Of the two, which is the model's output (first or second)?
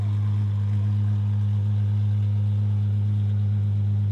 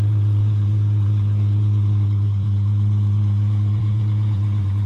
second